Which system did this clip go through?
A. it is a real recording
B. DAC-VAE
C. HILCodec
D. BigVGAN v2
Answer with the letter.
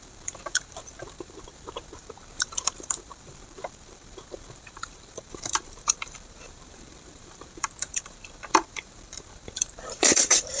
D